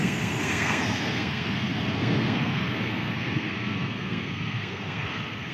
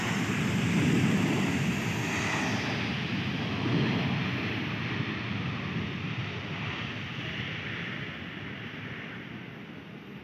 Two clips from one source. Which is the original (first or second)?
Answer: second